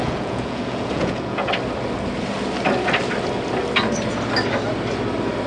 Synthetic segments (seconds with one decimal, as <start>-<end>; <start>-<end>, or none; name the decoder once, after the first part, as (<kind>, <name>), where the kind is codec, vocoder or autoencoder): 0.0-1.5 (vocoder, Vocos)